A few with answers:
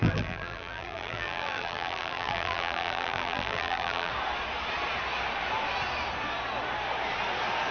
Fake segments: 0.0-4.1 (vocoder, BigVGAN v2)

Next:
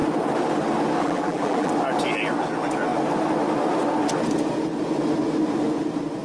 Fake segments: 1.0-1.7 (vocoder, BigVGAN v2)

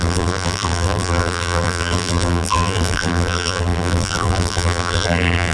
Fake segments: 0.0-5.5 (vocoder, BigVGAN v2)

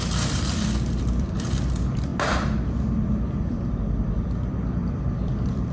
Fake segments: 0.0-2.1 (vocoder, BigVGAN v2); 3.2-5.7

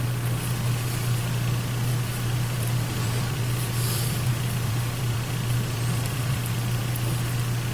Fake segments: 1.9-6.5 (vocoder, BigVGAN v2)

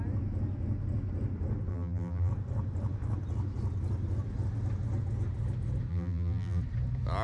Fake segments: 1.7-2.3 (vocoder, BigVGAN v2); 5.9-6.6

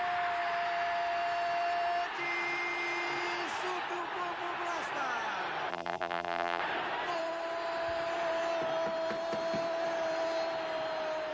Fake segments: 5.7-6.6 (vocoder, BigVGAN v2)